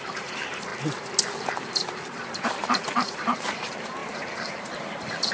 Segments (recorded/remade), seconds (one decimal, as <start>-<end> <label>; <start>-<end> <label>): 0.0-0.7 remade; 0.7-1.2 recorded; 1.2-5.3 remade

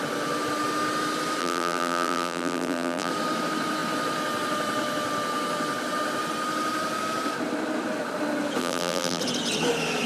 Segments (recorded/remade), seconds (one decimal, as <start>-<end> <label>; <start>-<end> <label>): 0.0-1.4 recorded; 1.4-3.1 remade; 3.1-8.6 recorded; 8.6-9.2 remade; 9.2-10.1 recorded